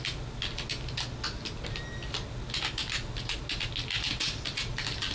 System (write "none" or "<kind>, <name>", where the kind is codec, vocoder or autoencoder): none